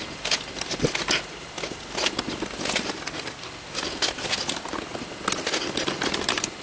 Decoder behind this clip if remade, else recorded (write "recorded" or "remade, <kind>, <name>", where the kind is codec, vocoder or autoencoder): recorded